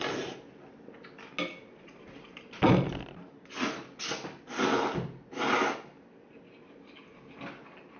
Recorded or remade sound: recorded